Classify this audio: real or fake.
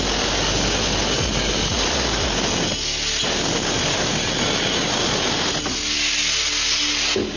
real